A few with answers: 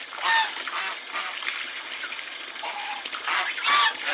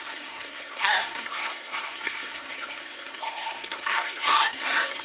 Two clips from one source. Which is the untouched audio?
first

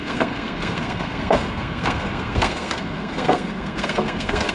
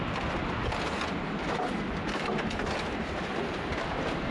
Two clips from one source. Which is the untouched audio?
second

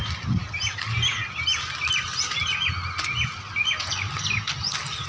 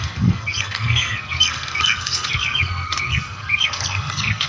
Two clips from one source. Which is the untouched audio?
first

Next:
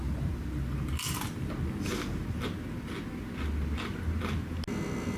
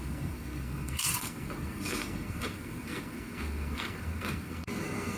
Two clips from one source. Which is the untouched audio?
first